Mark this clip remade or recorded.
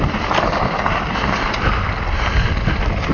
recorded